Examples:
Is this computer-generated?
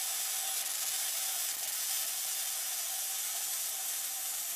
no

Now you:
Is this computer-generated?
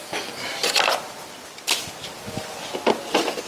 no